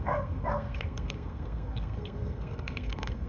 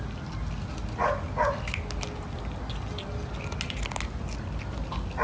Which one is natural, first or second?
second